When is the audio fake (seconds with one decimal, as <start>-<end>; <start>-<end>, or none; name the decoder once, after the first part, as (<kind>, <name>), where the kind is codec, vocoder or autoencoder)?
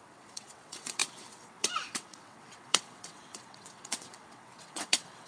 0.0-5.3 (vocoder, WaveNeXt)